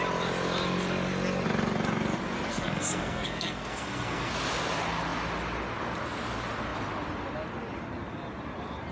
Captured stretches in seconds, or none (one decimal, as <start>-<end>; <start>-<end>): 0.0-2.5; 4.3-8.9